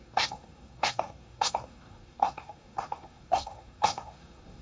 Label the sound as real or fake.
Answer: fake